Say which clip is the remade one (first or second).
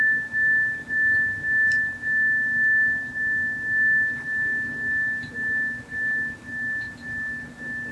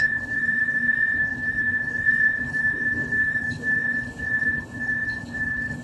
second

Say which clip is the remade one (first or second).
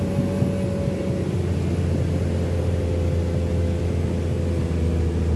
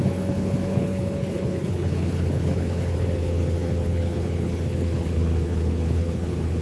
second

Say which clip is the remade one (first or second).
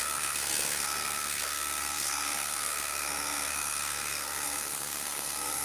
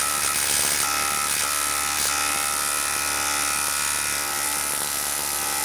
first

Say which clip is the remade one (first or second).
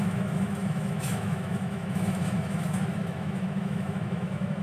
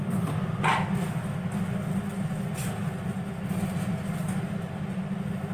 first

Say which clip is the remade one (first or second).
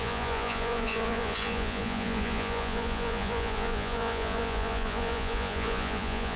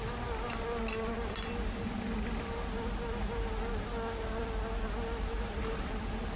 first